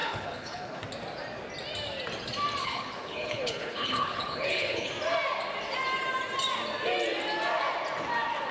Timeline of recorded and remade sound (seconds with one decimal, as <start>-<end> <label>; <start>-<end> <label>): 0.0-0.8 remade; 0.8-2.6 recorded; 2.6-4.9 remade; 4.9-8.5 recorded